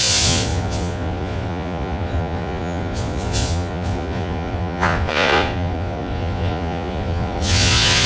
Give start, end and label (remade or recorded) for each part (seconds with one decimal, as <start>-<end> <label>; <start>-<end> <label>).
0.0-8.1 remade